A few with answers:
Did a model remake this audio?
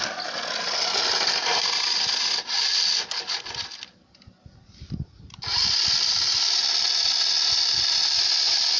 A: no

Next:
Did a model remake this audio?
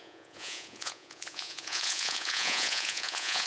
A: yes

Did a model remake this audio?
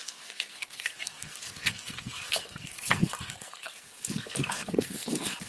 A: yes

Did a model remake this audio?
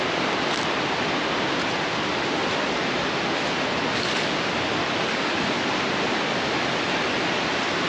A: no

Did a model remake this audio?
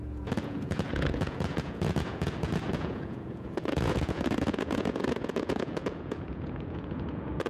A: yes